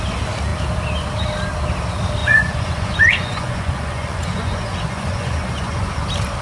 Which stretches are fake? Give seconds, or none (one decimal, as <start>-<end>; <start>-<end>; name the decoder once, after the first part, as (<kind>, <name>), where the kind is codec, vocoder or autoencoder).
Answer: 2.2-6.0 (vocoder, Vocos)

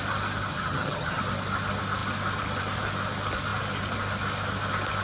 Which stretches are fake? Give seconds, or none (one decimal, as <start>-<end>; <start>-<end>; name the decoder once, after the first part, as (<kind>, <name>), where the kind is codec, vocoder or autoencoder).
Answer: 0.5-1.2 (vocoder, HiFi-GAN)

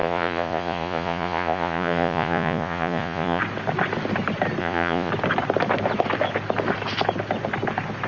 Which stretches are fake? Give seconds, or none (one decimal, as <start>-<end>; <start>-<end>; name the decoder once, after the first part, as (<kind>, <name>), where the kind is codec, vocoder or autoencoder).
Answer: 0.0-3.4 (vocoder, Vocos); 4.6-5.1

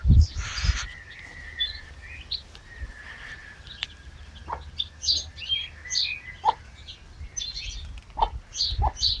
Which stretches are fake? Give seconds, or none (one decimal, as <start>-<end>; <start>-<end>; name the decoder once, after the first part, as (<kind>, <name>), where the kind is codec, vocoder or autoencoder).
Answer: none

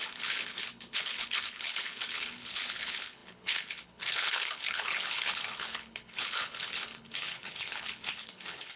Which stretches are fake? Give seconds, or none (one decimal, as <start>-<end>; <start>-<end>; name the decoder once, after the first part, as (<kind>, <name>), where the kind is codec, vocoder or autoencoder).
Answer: 0.0-8.8 (codec, HILCodec)

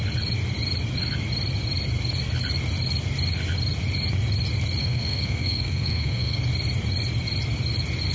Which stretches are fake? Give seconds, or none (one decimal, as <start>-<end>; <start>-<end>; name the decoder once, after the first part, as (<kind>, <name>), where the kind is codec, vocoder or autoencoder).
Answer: 4.8-6.4 (codec, SNAC)

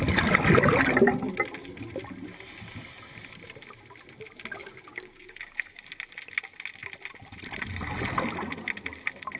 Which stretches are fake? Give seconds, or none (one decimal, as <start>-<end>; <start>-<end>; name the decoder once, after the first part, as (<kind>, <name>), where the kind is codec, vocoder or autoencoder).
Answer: 4.6-5.8 (codec, DAC)